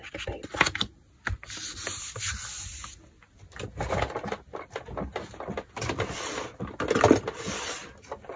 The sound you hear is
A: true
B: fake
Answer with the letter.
A